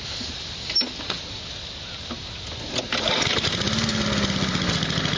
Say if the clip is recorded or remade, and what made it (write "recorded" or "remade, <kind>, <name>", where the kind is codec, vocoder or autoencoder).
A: recorded